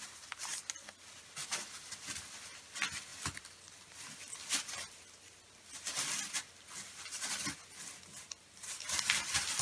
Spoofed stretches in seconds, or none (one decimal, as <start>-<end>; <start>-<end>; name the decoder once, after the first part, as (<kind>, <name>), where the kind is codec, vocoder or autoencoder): none